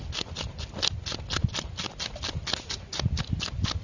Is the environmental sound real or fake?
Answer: real